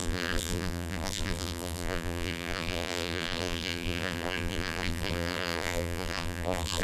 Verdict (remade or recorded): remade